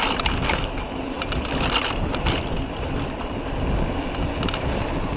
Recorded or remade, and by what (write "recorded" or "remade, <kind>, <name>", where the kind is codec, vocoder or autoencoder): recorded